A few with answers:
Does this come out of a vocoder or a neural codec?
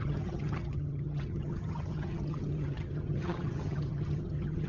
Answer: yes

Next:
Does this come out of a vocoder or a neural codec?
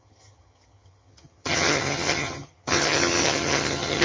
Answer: yes